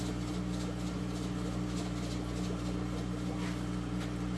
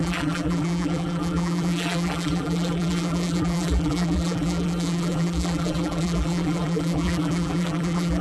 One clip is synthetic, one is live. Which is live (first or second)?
first